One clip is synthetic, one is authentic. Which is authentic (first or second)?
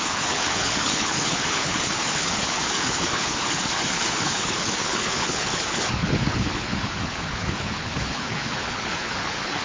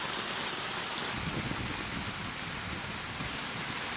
second